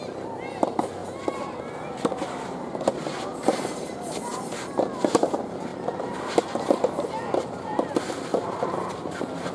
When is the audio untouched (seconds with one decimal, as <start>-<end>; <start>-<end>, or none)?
0.0-5.7; 6.2-8.3